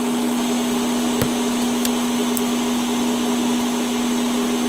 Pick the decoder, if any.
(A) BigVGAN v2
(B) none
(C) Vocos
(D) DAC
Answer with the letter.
B